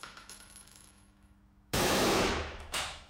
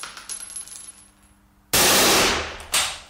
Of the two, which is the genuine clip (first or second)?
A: second